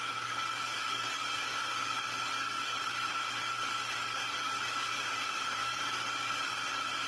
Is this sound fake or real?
fake